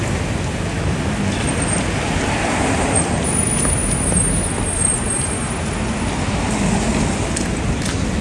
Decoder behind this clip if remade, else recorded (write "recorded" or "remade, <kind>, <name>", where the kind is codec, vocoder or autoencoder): recorded